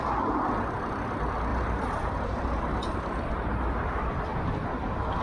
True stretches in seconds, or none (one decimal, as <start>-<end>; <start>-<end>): 0.0-1.5; 3.5-5.2